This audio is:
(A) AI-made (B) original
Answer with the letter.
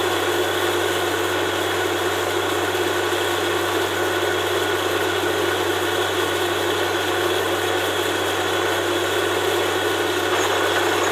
B